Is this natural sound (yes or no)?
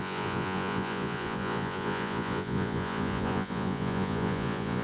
no